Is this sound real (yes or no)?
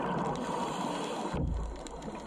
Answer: yes